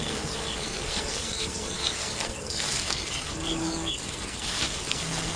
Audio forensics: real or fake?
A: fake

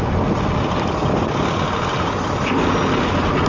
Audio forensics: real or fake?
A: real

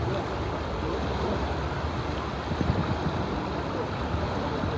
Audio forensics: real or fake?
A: real